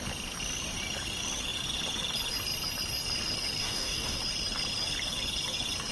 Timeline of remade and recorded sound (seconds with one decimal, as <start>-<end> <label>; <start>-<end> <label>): 0.0-3.6 recorded; 3.6-4.2 remade; 4.2-5.9 recorded